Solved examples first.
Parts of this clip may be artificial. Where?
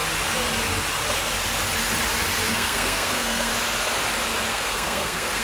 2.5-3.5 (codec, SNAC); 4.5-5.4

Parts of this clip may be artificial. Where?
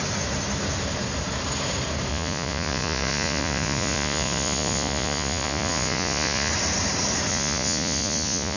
2.1-6.5 (vocoder, Vocos); 7.3-8.6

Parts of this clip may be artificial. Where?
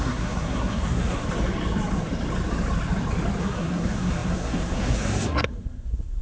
0.0-1.2 (codec, SNAC); 3.4-6.2